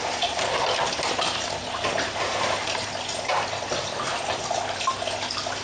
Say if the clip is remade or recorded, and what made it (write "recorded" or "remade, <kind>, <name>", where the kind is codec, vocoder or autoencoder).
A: recorded